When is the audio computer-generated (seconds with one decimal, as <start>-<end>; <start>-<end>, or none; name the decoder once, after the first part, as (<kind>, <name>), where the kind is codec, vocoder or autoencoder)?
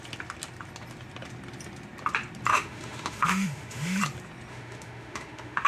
2.5-4.0 (autoencoder, DAC-VAE); 4.5-5.7